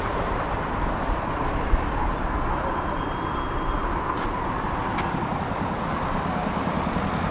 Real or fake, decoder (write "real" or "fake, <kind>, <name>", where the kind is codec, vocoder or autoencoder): real